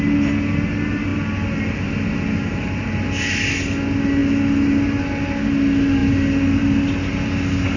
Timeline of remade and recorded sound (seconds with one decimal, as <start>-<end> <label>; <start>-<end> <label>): 0.0-7.8 recorded

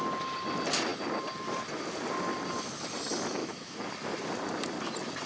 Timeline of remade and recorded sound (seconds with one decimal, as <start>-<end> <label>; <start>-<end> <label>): 0.0-3.4 recorded; 3.4-3.9 remade; 3.9-5.3 recorded

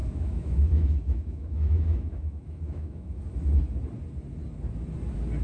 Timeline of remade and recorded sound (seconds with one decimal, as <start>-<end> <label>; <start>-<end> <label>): 0.0-3.2 remade; 3.2-5.4 recorded

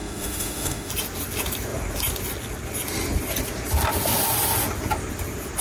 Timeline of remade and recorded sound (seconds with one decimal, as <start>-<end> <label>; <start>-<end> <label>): 0.0-0.9 remade; 0.9-5.6 recorded

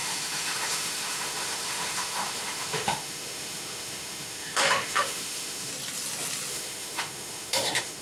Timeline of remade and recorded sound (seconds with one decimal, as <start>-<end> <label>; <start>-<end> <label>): 0.0-5.7 remade; 5.7-6.5 recorded; 6.5-8.0 remade